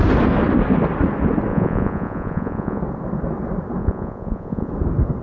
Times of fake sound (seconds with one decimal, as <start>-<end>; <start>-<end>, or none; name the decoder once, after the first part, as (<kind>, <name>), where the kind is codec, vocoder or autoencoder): 1.5-2.8 (vocoder, Vocos); 3.8-4.7